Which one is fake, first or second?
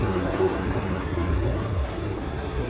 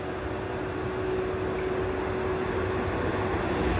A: first